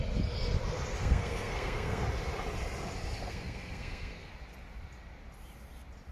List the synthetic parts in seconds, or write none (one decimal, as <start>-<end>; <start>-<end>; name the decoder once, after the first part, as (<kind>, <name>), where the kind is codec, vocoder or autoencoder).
1.0-2.0 (codec, SNAC); 3.2-4.3